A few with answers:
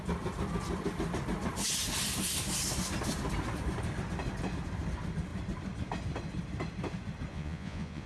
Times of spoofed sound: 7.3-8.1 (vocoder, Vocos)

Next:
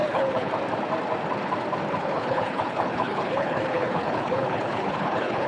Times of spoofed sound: 0.0-0.5 (codec, HILCodec); 2.0-5.5

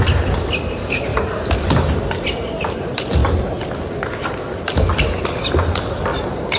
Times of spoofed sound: 0.0-1.1 (vocoder, BigVGAN v2); 1.9-3.2; 4.9-6.6

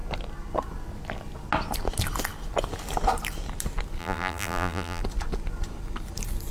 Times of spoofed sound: 4.0-5.0 (vocoder, BigVGAN v2)